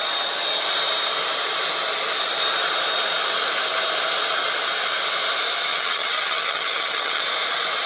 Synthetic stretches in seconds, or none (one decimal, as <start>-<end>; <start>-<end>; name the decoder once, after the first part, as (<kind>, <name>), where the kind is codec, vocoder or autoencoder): 5.7-7.2 (vocoder, HiFi-GAN)

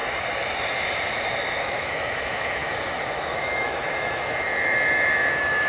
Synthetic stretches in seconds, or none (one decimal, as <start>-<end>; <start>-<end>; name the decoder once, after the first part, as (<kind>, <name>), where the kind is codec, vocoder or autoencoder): 1.6-5.7 (autoencoder, DAC-VAE)

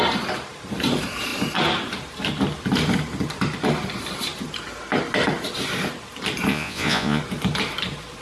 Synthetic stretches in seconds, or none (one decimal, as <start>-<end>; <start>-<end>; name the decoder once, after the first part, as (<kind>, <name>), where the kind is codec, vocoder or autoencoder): 6.5-7.2 (vocoder, Vocos)

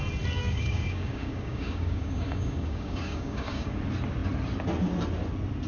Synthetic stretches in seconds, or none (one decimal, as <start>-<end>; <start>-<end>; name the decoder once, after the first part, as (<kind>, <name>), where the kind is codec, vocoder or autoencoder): 0.4-3.8 (codec, DAC)

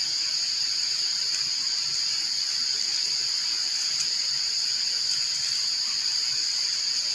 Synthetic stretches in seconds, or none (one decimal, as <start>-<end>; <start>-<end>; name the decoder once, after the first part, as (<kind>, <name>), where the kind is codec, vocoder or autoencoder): 2.6-4.2 (vocoder, BigVGAN v2)